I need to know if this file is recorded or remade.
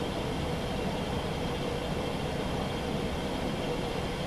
recorded